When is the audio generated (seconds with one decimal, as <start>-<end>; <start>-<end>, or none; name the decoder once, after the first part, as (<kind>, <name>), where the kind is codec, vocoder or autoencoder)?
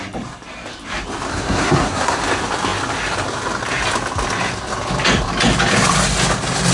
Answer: 1.3-2.2 (codec, SNAC)